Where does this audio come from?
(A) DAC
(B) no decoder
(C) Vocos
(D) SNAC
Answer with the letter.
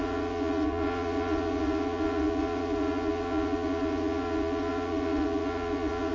C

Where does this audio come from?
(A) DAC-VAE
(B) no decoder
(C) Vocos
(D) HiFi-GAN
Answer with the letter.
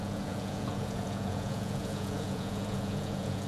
C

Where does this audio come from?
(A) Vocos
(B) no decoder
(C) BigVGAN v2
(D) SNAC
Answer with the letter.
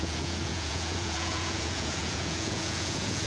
A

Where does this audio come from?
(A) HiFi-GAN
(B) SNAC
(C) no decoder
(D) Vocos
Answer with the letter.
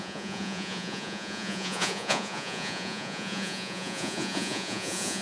D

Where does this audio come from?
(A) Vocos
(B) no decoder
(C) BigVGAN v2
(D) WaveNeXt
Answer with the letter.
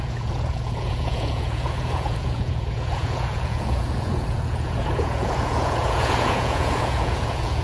A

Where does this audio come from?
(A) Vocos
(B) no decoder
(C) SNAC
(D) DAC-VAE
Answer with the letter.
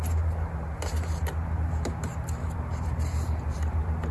B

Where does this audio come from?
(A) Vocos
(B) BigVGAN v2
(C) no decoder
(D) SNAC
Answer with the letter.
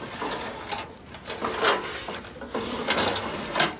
C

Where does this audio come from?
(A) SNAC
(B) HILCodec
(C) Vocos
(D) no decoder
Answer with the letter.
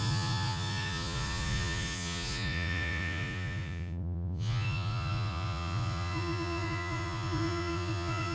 C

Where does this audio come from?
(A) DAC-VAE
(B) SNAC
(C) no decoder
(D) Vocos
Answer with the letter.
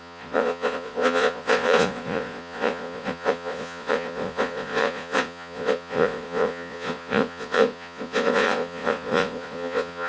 D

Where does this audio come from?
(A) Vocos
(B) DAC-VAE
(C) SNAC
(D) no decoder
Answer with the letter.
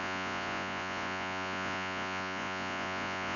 A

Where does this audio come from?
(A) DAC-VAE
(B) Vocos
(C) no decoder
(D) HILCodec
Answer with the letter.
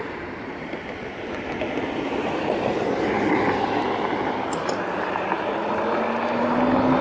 C